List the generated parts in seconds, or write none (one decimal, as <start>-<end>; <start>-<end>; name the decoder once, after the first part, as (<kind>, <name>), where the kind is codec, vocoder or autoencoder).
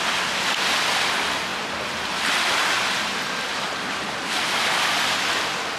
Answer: 1.5-5.0 (vocoder, BigVGAN v2)